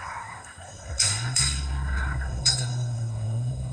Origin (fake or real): fake